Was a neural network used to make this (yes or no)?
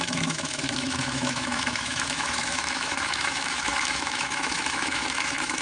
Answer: yes